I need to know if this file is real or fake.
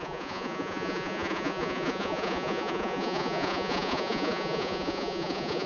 fake